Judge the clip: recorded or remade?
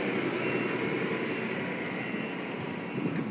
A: recorded